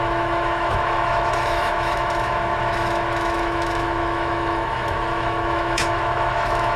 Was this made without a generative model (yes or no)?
no